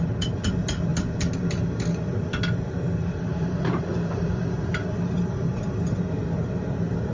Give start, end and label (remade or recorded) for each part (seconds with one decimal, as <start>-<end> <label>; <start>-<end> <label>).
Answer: 0.0-3.3 recorded; 3.3-6.0 remade; 6.0-7.1 recorded